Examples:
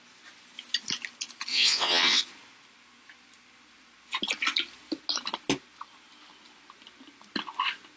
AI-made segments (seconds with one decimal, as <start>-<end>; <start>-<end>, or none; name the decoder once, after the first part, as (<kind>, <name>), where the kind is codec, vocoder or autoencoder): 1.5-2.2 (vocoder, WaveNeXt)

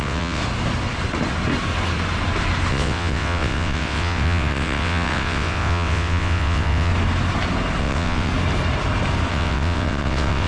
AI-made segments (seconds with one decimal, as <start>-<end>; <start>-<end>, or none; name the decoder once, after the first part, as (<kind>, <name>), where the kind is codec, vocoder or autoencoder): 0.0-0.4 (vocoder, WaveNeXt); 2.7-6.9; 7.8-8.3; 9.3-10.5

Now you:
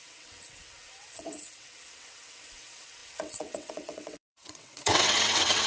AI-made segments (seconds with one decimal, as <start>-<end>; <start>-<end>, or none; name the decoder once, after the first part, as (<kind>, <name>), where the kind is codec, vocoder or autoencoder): 0.0-5.7 (vocoder, WaveNeXt)

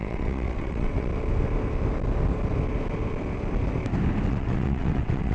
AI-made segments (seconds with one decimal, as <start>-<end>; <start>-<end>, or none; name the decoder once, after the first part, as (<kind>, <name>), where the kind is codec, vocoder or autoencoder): 0.0-1.1 (vocoder, WaveNeXt); 4.3-5.3